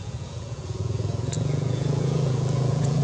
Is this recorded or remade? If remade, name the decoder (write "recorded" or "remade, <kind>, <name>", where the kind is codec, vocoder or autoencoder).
remade, vocoder, Vocos